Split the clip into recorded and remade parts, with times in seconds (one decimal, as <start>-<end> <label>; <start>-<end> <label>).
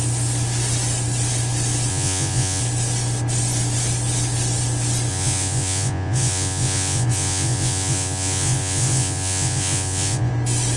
0.0-1.9 recorded; 1.9-2.6 remade; 2.6-5.1 recorded; 5.1-10.3 remade; 10.3-10.8 recorded